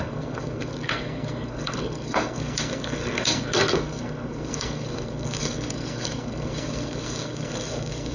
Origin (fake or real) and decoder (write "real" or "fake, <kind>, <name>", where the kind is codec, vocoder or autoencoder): fake, codec, SNAC